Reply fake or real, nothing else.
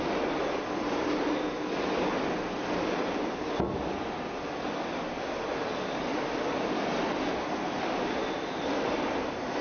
real